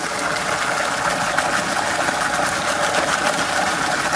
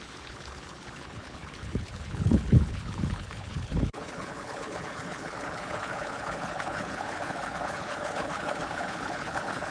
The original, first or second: first